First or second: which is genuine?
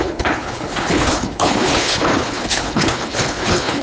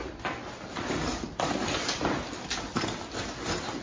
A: second